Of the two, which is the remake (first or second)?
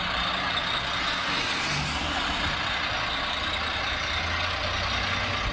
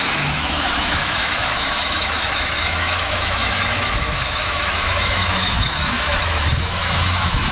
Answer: second